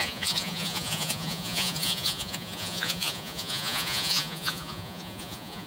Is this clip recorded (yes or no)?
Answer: no